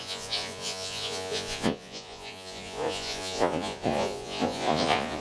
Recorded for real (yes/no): no